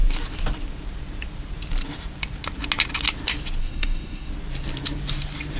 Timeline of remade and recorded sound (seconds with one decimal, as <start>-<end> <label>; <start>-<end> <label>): 0.0-3.6 recorded; 3.6-4.3 remade; 4.3-5.6 recorded